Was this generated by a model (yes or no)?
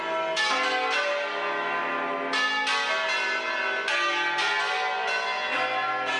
no